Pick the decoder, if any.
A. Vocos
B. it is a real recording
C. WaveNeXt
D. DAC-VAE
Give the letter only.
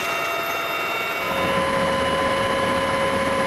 B